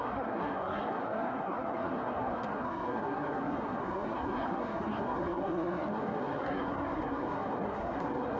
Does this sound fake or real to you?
fake